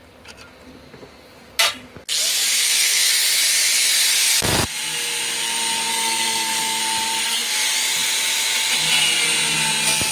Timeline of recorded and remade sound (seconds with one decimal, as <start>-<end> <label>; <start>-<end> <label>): 0.0-2.6 recorded; 2.6-3.1 remade; 3.1-5.9 recorded; 5.9-6.8 remade; 6.8-10.1 recorded